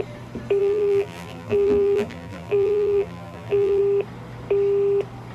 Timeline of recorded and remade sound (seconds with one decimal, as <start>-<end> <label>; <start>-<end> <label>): 0.0-0.6 recorded; 0.6-3.8 remade; 3.8-5.3 recorded